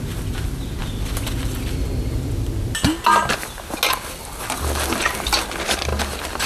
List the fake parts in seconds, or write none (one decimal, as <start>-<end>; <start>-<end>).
none